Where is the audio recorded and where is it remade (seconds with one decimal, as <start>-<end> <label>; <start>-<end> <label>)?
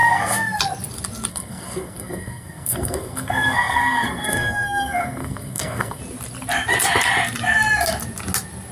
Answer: 0.0-0.6 remade; 0.6-1.3 recorded; 1.3-6.0 remade; 6.0-8.7 recorded